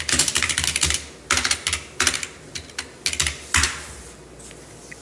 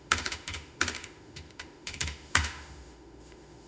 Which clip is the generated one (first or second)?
second